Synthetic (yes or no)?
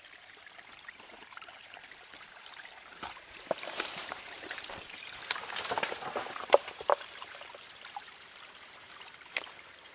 yes